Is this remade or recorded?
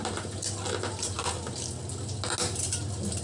recorded